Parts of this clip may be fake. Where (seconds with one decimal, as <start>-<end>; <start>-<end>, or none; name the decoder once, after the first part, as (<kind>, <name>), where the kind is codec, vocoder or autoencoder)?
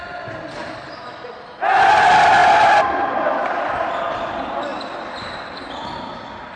2.4-3.2 (vocoder, BigVGAN v2); 4.7-5.7